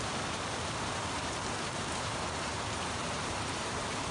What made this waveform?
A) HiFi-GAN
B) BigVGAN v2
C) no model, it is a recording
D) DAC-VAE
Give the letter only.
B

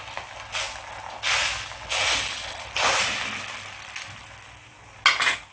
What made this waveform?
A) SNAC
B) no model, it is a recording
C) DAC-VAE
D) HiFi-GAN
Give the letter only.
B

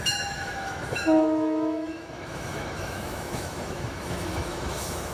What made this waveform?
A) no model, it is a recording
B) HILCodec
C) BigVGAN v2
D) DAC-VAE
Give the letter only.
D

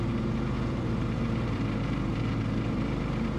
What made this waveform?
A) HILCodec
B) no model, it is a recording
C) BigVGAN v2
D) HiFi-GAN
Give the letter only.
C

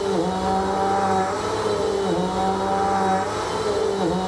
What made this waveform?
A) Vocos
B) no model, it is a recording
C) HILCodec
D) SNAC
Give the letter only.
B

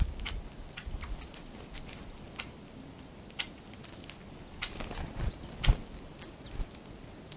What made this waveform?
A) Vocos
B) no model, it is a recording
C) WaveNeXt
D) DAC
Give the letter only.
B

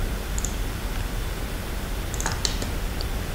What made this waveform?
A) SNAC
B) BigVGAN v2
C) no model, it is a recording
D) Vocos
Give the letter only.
C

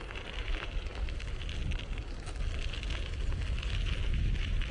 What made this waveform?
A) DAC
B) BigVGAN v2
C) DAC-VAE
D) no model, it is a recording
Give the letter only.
D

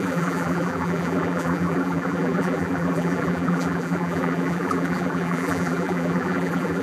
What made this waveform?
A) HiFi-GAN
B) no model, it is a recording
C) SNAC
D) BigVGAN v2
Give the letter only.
D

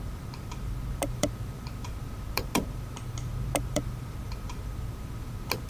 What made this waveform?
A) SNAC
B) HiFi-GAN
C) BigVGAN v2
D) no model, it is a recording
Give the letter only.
C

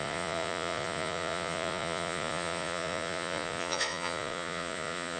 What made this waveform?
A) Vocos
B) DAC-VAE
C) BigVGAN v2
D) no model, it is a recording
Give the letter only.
A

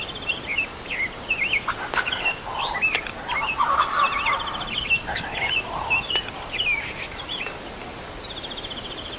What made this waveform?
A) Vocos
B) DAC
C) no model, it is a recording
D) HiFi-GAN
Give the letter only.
C